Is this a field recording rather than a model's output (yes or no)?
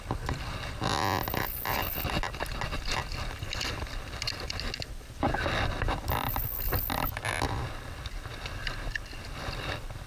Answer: yes